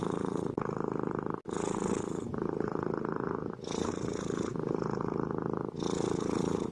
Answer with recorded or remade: recorded